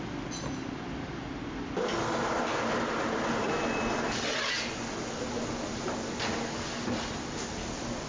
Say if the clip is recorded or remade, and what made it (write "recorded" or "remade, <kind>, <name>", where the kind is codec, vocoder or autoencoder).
recorded